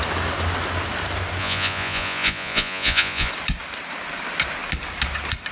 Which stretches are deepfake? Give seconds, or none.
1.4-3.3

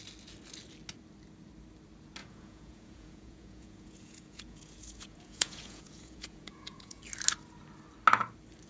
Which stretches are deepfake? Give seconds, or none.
2.2-7.0

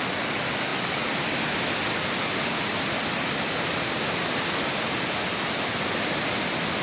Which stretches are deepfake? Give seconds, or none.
none

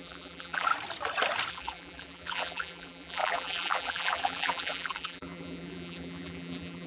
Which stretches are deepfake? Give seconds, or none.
0.0-0.7; 1.5-6.9

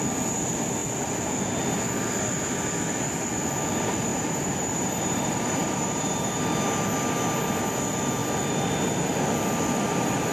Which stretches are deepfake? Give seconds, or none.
4.1-6.4

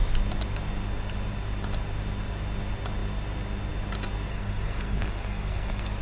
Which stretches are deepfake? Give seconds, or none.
4.3-6.0

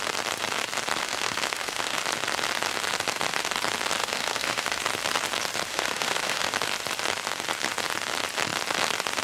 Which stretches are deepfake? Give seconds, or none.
1.0-2.0; 4.0-4.8; 5.7-6.5